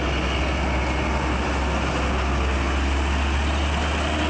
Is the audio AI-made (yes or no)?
no